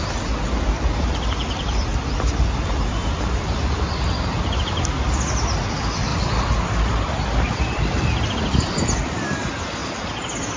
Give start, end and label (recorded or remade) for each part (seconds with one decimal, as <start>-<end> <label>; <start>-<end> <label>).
0.0-1.9 recorded; 1.9-2.5 remade; 2.5-6.1 recorded; 6.1-8.8 remade; 8.8-10.6 recorded